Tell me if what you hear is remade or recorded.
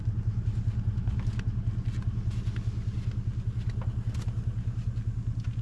recorded